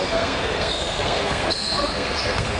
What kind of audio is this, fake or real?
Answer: fake